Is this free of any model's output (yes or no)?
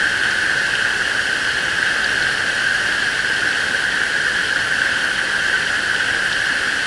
yes